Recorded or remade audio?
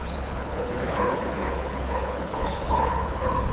remade